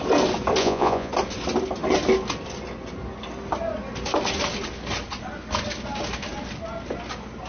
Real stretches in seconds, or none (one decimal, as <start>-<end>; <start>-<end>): 0.0-0.6; 1.1-7.5